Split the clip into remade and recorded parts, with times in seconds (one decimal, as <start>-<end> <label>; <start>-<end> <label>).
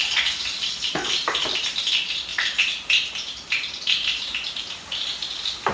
0.0-5.7 recorded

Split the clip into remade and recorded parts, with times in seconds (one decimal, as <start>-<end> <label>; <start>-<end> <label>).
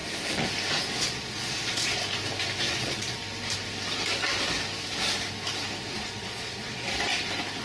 0.0-0.9 recorded; 0.9-2.0 remade; 2.0-2.6 recorded; 2.6-3.2 remade; 3.2-5.8 recorded; 5.8-7.1 remade; 7.1-7.6 recorded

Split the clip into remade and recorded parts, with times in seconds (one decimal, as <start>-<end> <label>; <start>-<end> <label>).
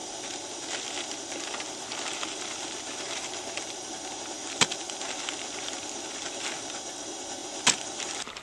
0.0-8.4 recorded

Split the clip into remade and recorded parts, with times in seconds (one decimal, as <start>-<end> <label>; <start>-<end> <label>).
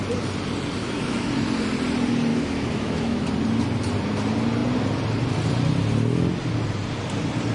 0.0-0.8 recorded; 0.8-1.3 remade; 1.3-2.3 recorded; 2.3-3.3 remade; 3.3-7.5 recorded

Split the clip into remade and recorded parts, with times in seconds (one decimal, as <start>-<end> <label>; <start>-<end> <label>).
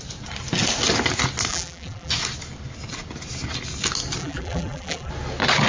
0.0-1.5 recorded; 1.5-2.1 remade; 2.1-4.2 recorded; 4.2-5.1 remade; 5.1-5.7 recorded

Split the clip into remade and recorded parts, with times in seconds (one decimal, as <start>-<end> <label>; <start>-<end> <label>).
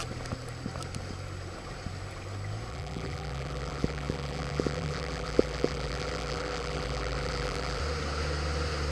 0.0-2.7 recorded; 2.7-7.8 remade; 7.8-8.9 recorded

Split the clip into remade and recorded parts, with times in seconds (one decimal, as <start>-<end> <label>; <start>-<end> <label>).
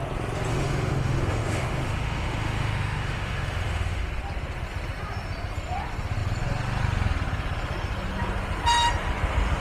0.0-0.5 recorded; 0.5-4.1 remade; 4.1-9.6 recorded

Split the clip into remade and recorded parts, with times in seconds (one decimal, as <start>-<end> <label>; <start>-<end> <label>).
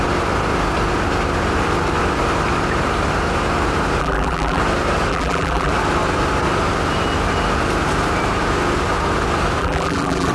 0.0-4.0 recorded; 4.0-4.6 remade; 4.6-5.1 recorded; 5.1-5.7 remade; 5.7-9.6 recorded; 9.6-10.3 remade